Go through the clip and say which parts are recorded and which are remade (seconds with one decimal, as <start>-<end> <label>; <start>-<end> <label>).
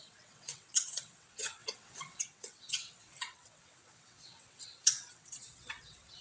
0.0-6.2 remade